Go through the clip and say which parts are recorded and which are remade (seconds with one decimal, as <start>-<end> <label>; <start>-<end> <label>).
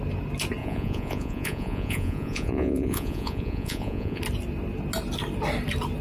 0.0-0.6 recorded; 0.6-4.2 remade; 4.2-6.0 recorded